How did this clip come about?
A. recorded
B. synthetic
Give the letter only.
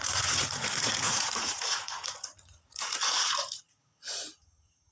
B